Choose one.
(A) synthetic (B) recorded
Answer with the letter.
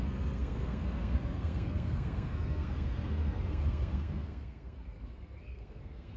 A